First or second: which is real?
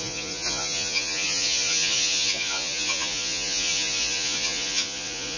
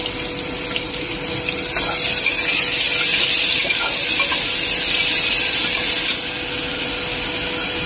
second